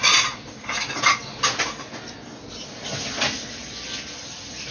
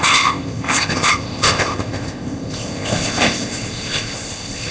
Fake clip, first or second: second